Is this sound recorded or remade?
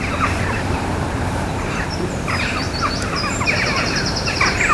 remade